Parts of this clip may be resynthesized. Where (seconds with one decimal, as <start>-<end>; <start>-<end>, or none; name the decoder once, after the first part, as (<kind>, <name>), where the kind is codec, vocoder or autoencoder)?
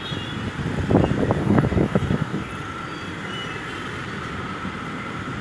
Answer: 1.4-2.5 (codec, DAC)